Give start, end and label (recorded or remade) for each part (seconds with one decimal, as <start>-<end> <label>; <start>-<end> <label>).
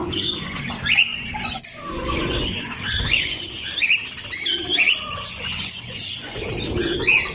0.0-0.6 remade; 0.6-1.1 recorded; 1.1-3.7 remade; 3.7-4.7 recorded; 4.7-6.5 remade; 6.5-7.3 recorded